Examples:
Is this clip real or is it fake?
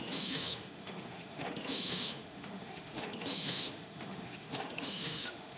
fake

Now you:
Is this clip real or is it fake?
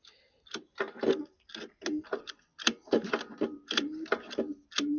real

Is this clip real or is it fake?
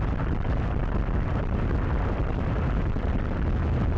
fake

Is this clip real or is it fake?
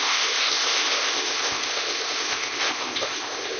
fake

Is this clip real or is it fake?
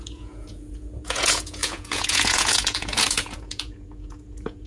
fake